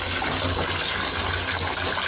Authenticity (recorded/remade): recorded